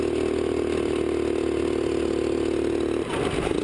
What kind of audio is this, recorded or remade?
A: recorded